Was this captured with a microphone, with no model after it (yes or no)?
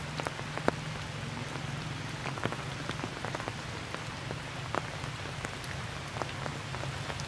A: yes